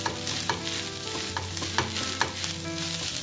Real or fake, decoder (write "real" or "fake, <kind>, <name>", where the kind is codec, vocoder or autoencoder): real